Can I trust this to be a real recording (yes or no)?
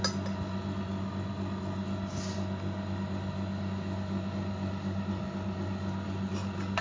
yes